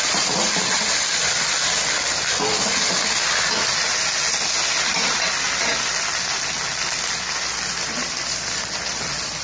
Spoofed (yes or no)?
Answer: no